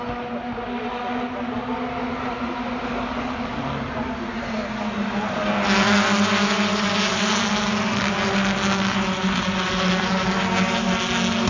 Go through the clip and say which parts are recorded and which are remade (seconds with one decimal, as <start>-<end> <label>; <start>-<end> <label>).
0.0-11.5 recorded